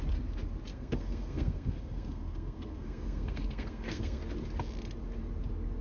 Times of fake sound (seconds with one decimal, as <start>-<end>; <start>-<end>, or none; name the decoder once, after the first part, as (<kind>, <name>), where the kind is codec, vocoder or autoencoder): 0.7-4.2 (codec, SNAC)